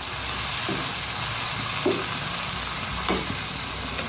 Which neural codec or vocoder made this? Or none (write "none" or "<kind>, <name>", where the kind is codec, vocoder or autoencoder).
none